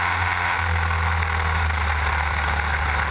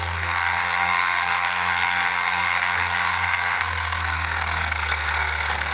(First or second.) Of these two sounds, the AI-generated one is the second